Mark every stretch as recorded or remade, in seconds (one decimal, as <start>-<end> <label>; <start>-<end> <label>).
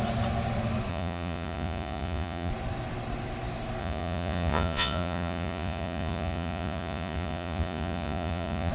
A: 0.0-0.9 recorded; 0.9-2.5 remade; 2.5-3.8 recorded; 3.8-8.7 remade